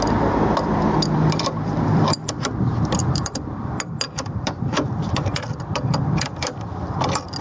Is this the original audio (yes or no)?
no